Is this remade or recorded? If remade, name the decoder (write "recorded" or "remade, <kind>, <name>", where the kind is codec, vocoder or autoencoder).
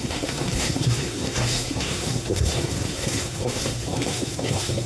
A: remade, codec, SNAC